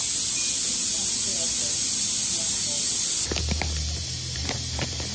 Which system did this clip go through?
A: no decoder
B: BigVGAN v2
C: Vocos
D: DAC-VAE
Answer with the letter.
A